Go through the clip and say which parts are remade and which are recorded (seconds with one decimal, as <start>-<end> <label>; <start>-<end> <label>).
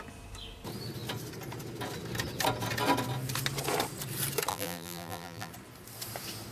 0.0-4.5 recorded; 4.5-5.5 remade; 5.5-6.5 recorded